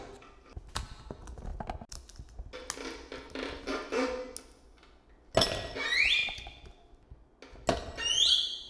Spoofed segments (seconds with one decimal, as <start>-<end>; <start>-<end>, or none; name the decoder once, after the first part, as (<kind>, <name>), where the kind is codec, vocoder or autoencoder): 6.2-6.7 (vocoder, Vocos)

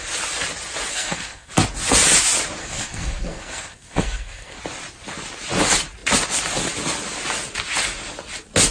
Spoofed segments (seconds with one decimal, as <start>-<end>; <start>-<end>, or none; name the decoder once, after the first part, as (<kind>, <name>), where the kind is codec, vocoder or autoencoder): 0.9-1.5 (codec, SNAC); 2.6-4.6

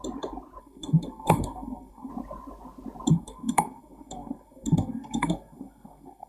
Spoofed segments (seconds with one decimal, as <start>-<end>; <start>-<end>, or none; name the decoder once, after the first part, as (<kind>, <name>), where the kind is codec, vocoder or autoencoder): 0.6-2.1 (codec, SNAC); 3.1-6.3

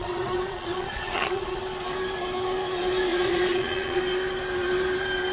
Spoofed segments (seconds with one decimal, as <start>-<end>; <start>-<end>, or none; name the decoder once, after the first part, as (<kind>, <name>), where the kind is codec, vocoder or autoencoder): 0.0-1.6 (vocoder, Vocos); 3.1-4.0

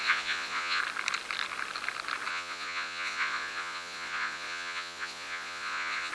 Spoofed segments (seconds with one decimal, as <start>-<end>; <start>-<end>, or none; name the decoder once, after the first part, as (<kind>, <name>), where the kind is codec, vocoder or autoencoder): 0.0-0.8 (vocoder, Vocos); 2.3-6.1

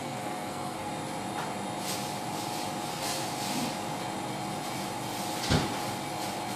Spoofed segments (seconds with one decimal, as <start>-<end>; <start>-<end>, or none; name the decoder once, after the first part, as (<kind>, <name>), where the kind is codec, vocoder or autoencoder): 0.0-0.9 (codec, SNAC); 2.9-3.3

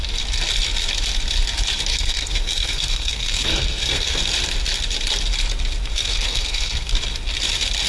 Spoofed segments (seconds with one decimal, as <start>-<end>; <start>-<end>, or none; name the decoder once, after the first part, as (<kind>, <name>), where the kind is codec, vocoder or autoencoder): 1.9-4.2 (codec, SNAC); 5.9-6.9

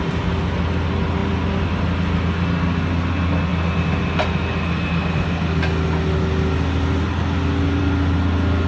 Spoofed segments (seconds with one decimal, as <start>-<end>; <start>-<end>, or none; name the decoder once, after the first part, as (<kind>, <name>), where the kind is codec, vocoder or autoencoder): none